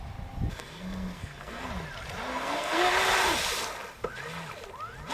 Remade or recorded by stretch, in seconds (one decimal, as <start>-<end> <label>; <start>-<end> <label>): 0.0-0.5 recorded; 0.5-1.7 remade; 1.7-2.3 recorded; 2.3-2.9 remade; 2.9-5.1 recorded